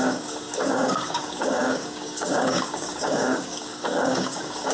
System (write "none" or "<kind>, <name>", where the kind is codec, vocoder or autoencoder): codec, DAC